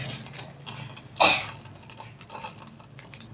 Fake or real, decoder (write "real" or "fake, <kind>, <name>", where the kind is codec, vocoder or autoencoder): real